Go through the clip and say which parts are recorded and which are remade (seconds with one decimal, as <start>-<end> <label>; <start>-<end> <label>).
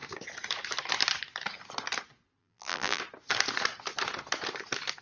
0.0-2.4 recorded; 2.4-3.0 remade; 3.0-5.0 recorded